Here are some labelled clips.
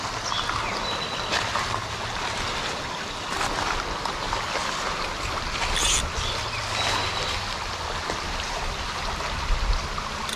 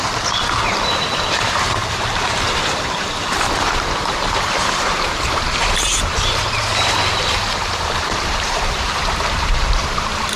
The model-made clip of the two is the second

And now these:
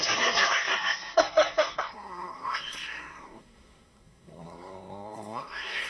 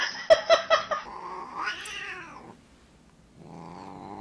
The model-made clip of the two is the first